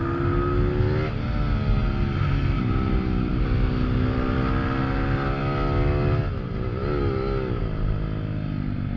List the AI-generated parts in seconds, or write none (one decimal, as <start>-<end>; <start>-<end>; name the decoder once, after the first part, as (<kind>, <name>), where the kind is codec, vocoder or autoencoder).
none